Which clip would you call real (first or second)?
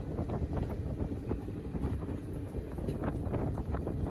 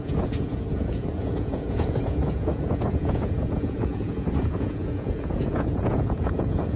first